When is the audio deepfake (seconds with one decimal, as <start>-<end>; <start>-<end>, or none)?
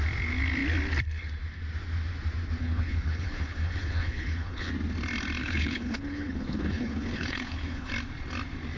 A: 2.6-4.7; 5.4-7.9